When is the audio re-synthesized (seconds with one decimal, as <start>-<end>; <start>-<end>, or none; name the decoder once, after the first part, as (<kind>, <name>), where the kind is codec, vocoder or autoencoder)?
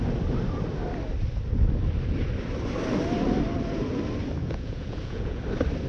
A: 4.4-5.4 (vocoder, Vocos)